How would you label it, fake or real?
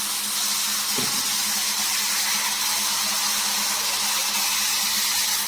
real